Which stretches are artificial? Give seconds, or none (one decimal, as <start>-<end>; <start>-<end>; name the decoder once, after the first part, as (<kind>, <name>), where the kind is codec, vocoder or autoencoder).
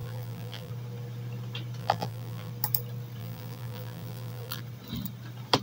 0.0-0.7 (vocoder, BigVGAN v2); 1.8-2.5; 3.2-4.6